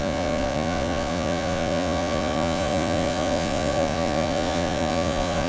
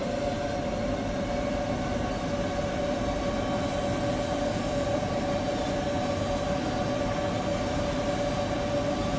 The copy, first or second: first